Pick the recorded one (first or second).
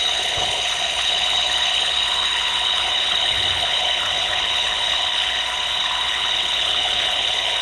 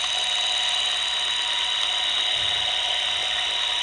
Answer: second